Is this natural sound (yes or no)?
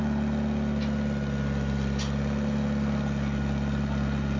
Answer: yes